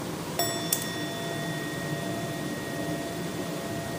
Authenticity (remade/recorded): recorded